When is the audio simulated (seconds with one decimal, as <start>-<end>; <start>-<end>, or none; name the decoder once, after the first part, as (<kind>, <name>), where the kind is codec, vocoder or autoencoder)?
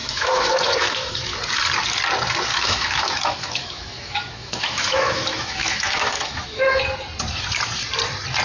0.0-1.4 (autoencoder, DAC-VAE); 2.5-6.8